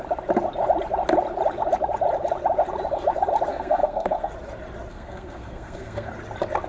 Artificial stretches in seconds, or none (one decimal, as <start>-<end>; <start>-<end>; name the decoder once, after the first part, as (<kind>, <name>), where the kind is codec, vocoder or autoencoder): 3.5-4.3 (codec, SNAC); 4.9-6.1